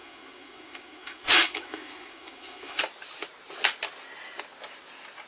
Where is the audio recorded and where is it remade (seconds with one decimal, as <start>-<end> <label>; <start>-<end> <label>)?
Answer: 0.0-2.8 remade; 2.8-5.3 recorded